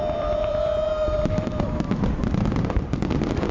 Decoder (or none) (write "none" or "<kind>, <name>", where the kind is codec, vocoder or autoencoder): vocoder, BigVGAN v2